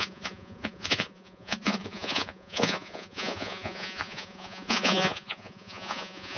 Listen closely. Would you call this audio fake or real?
fake